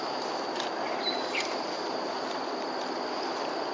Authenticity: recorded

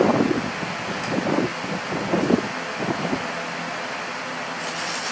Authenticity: recorded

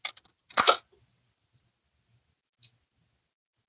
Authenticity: recorded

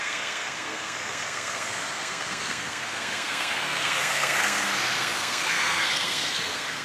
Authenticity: remade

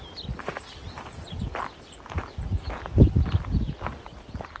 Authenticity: recorded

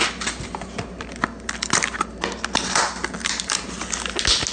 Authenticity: recorded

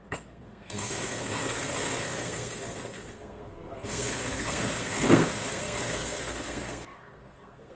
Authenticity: remade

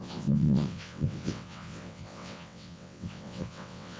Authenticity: remade